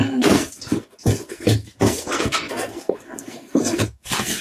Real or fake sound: fake